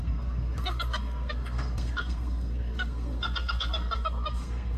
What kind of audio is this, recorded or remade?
remade